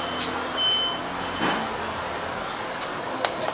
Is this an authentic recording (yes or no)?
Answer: yes